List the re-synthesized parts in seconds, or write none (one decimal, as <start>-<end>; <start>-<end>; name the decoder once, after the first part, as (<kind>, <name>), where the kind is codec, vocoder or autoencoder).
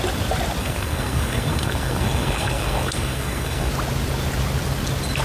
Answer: 0.6-3.7 (codec, SNAC)